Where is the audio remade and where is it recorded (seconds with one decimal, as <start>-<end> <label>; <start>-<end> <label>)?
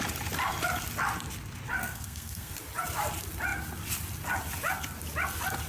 0.0-1.8 recorded; 1.8-2.5 remade; 2.5-5.7 recorded